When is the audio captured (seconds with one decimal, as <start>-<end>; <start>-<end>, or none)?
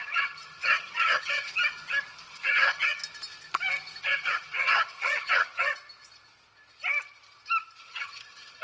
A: 1.5-2.3; 3.0-4.0; 5.7-7.8